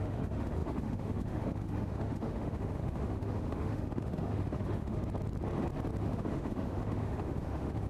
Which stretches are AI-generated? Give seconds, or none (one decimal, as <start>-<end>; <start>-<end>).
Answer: 0.0-5.0; 6.0-7.9